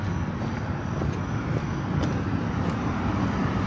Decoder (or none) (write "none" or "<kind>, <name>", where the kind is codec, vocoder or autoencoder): none